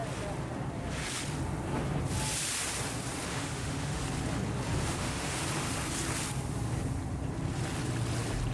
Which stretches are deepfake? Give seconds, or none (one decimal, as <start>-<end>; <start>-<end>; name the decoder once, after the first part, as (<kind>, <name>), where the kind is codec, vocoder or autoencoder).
3.3-4.0 (autoencoder, DAC-VAE); 4.8-5.4